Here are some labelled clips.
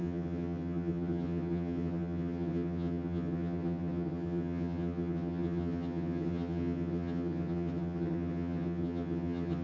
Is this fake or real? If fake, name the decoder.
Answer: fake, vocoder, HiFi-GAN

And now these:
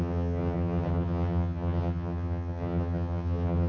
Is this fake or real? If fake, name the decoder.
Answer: fake, vocoder, HiFi-GAN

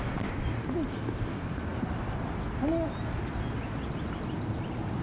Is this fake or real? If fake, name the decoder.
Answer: real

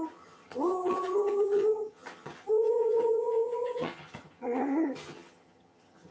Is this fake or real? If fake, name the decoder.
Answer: fake, vocoder, HiFi-GAN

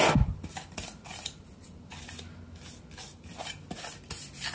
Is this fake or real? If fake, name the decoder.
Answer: real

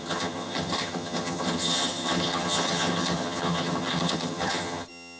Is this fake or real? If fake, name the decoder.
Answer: fake, vocoder, HiFi-GAN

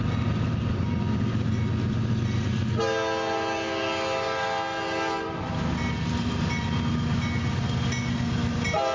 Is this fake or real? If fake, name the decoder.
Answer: real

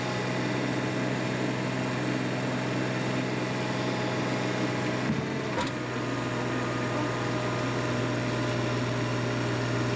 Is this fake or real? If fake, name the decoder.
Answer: real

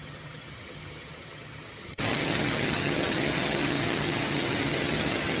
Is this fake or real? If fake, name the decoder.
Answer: fake, vocoder, HiFi-GAN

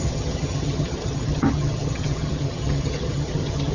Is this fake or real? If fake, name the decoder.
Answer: fake, vocoder, HiFi-GAN